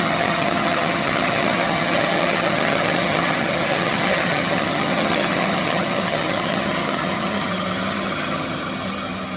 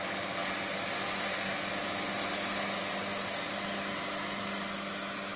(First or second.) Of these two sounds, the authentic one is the second